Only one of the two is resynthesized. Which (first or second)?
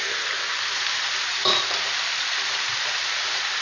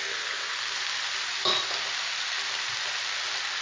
first